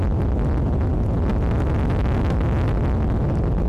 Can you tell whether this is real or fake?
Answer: real